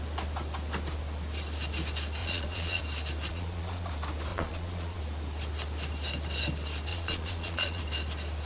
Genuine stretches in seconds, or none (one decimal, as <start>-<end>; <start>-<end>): 0.0-2.2; 2.8-3.3; 3.9-4.3; 5.0-6.9; 7.8-8.5